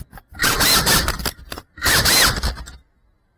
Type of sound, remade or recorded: recorded